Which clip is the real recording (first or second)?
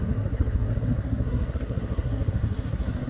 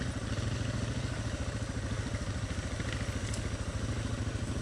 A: second